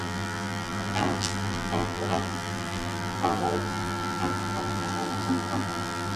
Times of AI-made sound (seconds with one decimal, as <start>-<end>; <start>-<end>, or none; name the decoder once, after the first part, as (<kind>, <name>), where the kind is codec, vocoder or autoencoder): 0.0-6.2 (vocoder, BigVGAN v2)